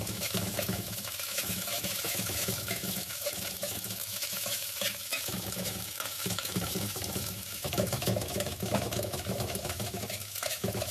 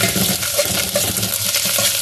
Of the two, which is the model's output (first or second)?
first